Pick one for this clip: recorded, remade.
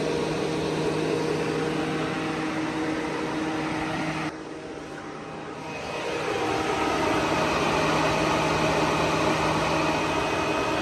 recorded